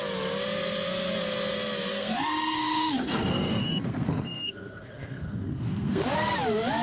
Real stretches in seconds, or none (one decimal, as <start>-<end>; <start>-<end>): 0.0-1.9; 6.0-6.8